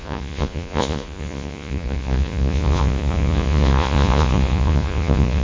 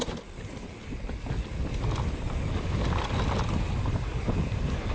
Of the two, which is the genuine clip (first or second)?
second